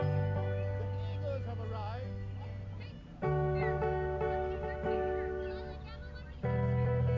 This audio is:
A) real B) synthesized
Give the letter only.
A